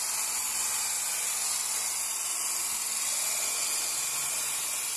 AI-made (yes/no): no